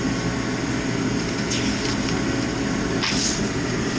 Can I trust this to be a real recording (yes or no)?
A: yes